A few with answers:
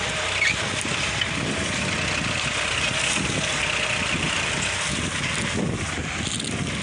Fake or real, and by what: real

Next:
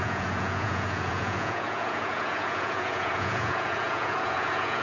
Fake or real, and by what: fake, vocoder, Vocos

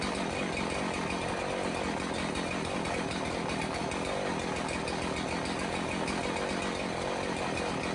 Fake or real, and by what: real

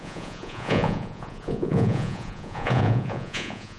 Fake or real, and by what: fake, vocoder, Vocos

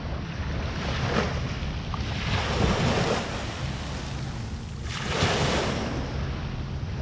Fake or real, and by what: real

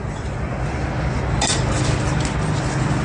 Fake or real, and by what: real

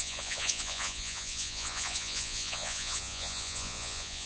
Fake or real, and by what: fake, vocoder, Vocos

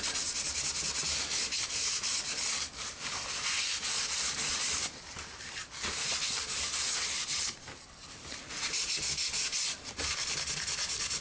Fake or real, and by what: real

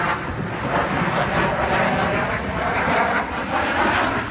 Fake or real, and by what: real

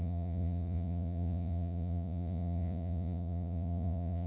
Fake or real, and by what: fake, vocoder, Vocos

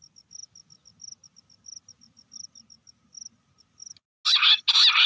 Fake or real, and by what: real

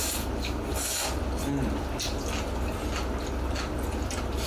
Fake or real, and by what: real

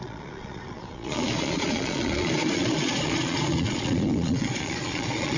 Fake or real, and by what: fake, vocoder, Vocos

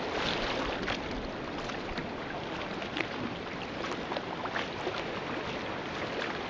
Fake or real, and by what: real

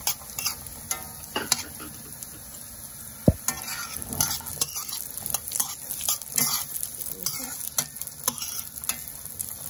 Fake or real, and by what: real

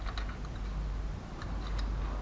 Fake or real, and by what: real